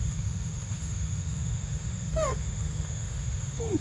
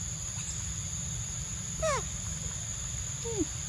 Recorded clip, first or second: second